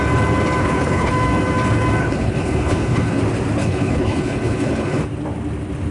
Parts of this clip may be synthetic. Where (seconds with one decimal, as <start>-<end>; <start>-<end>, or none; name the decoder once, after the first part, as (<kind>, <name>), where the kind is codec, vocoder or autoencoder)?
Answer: 0.6-1.1 (codec, HILCodec); 2.0-3.2; 3.6-5.0